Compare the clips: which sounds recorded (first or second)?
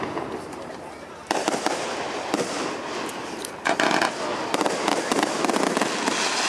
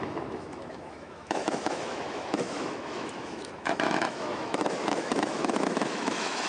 first